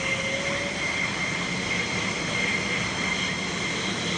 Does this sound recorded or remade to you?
recorded